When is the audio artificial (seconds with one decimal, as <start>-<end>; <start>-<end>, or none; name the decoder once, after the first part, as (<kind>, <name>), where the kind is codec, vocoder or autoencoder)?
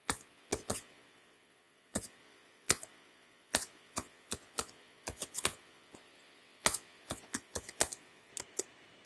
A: 0.0-8.3 (vocoder, Vocos)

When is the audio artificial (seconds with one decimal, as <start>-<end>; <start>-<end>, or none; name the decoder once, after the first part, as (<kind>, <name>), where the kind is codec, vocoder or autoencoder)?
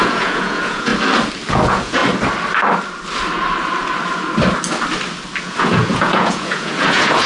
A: 0.0-0.9 (vocoder, Vocos); 1.5-2.0; 5.4-7.3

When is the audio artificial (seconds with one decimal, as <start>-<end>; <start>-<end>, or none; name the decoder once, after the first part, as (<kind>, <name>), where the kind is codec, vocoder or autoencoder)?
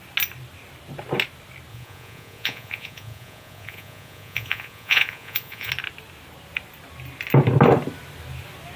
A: 1.7-5.7 (vocoder, Vocos)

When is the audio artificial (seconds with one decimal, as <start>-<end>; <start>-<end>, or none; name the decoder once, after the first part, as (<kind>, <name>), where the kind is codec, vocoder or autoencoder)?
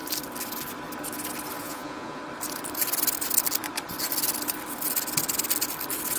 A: 1.6-2.2 (vocoder, Vocos)